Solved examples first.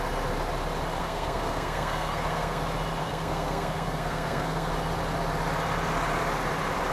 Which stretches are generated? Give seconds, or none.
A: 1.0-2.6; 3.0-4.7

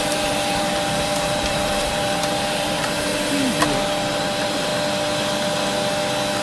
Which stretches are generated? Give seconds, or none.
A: 0.0-3.1; 4.1-4.7